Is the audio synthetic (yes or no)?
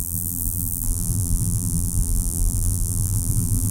yes